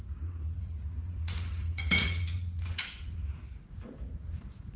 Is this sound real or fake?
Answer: fake